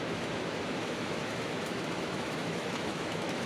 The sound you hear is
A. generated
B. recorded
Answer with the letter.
A